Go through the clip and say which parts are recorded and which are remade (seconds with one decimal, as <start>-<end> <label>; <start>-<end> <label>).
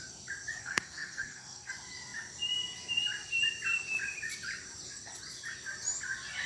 0.0-0.6 recorded; 0.6-1.7 remade; 1.7-6.5 recorded